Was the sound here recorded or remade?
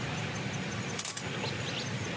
recorded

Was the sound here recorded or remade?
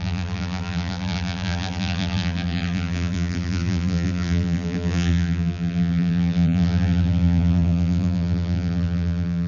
remade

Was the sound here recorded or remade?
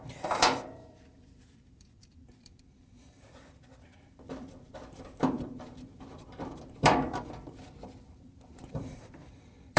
remade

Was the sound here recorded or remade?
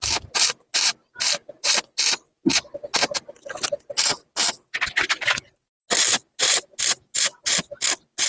recorded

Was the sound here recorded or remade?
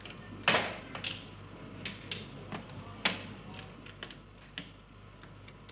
recorded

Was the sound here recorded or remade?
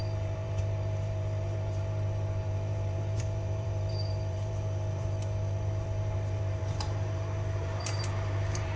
remade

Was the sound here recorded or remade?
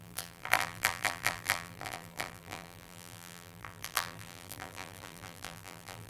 remade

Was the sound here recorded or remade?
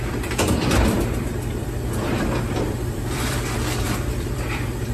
remade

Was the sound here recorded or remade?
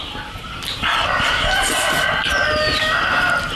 recorded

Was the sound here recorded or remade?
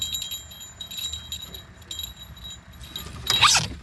recorded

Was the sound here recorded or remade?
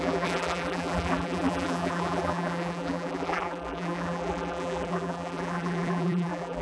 remade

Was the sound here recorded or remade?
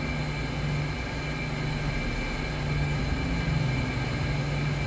recorded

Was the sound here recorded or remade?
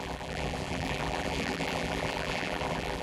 remade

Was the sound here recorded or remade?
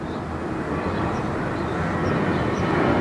remade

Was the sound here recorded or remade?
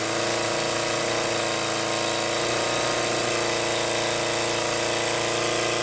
recorded